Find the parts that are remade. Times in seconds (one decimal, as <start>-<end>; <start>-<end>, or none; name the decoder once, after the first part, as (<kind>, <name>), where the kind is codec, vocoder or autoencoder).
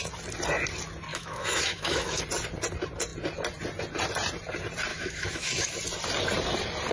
1.1-2.2 (autoencoder, DAC-VAE); 4.9-5.7